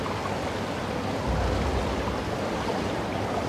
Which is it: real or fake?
real